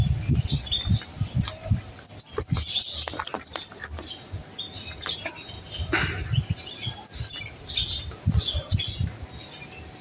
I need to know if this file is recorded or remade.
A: recorded